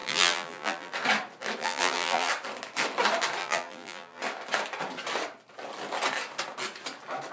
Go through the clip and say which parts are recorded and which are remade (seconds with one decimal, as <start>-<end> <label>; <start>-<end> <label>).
0.0-0.9 remade; 0.9-1.6 recorded; 1.6-2.3 remade; 2.3-3.4 recorded; 3.4-4.2 remade; 4.2-7.3 recorded